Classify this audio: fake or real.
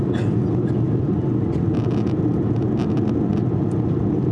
real